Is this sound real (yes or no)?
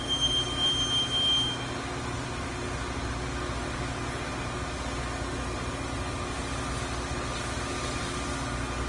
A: yes